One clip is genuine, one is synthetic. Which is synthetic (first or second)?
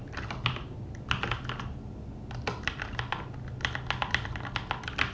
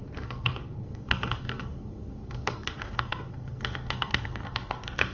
second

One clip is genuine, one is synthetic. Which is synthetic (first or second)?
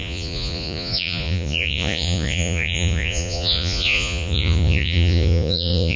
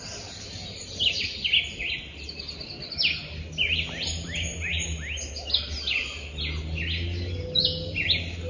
first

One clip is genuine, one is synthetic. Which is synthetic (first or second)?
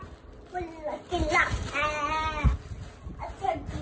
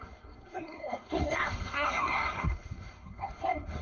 second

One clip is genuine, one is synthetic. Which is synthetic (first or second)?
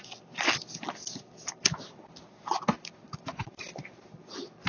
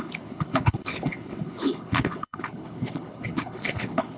second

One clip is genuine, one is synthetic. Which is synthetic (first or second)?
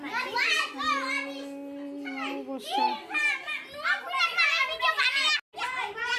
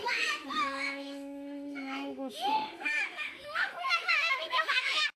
second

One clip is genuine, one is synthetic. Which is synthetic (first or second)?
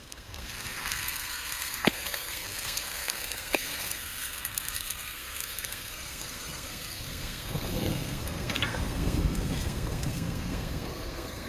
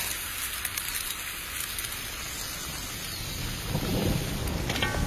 first